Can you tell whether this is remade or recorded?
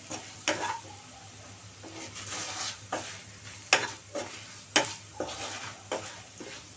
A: recorded